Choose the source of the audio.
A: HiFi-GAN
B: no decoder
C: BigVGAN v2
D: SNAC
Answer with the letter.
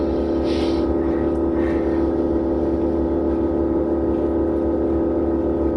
B